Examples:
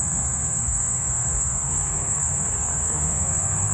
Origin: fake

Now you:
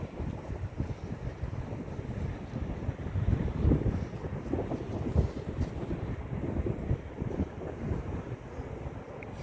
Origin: real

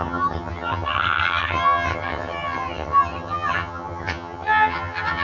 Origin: fake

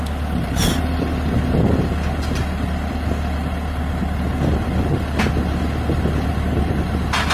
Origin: real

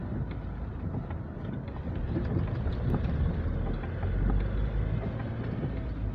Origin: real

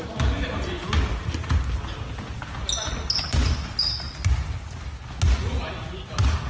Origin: real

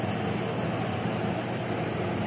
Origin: real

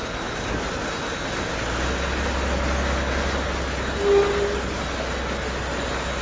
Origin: real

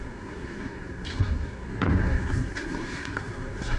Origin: fake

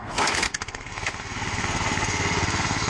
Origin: fake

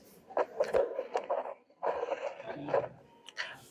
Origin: real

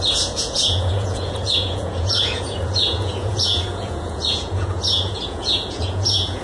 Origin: fake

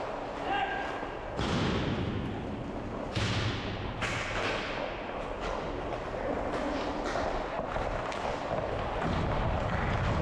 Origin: real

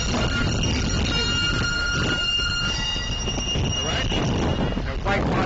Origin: real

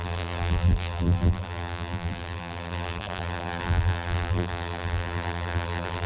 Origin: fake